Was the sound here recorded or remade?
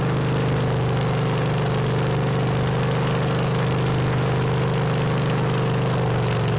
recorded